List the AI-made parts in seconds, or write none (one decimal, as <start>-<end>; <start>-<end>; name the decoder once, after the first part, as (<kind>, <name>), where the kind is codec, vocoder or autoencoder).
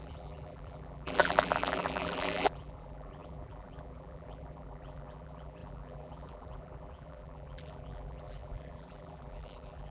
0.0-9.9 (vocoder, BigVGAN v2)